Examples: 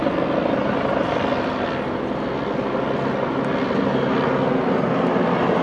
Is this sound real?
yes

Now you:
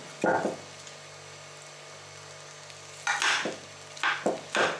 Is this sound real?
yes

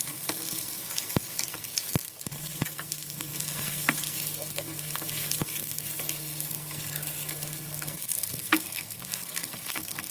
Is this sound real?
no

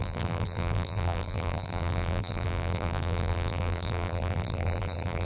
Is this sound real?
no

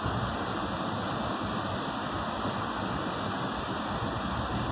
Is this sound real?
yes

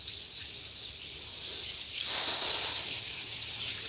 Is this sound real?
no